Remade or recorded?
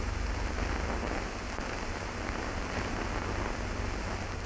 recorded